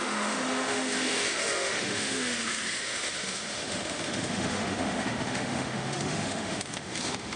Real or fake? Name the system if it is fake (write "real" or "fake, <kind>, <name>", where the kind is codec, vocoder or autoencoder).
fake, autoencoder, DAC-VAE